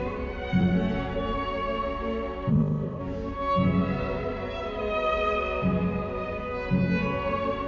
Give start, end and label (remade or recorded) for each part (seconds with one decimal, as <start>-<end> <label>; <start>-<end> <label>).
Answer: 0.0-2.5 recorded; 2.5-3.0 remade; 3.0-7.7 recorded